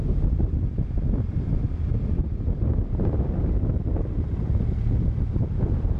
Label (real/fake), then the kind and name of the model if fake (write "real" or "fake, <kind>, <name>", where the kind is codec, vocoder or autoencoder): real